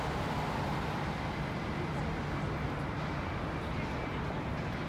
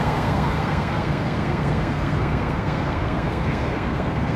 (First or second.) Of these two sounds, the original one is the first